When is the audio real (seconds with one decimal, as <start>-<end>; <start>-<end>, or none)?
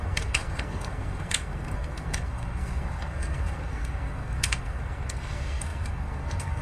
none